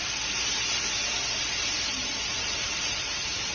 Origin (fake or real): fake